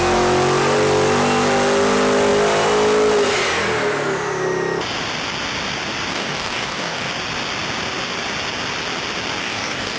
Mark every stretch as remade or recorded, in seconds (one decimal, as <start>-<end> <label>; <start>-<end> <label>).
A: 0.0-6.1 recorded; 6.1-7.1 remade; 7.1-9.4 recorded; 9.4-10.0 remade